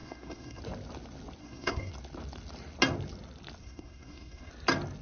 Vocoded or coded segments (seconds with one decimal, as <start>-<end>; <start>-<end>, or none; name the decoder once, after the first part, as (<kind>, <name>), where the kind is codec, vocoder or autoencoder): 0.0-0.6 (codec, SNAC); 1.4-1.9; 3.6-4.5

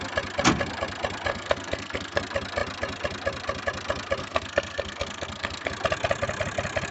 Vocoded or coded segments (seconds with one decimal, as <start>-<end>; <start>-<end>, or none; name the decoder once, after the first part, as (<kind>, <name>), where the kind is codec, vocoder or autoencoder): 1.3-2.2 (codec, SNAC); 4.2-5.7

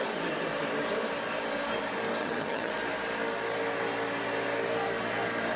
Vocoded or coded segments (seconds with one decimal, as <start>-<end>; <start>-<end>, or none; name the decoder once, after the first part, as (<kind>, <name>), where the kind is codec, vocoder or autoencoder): 2.2-2.7 (vocoder, HiFi-GAN)